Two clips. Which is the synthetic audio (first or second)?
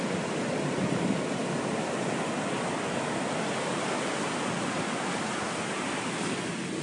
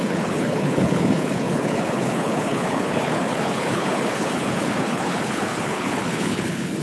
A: second